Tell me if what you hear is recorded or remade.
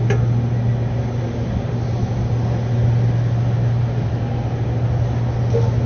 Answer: recorded